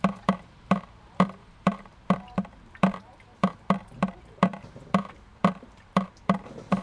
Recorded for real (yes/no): no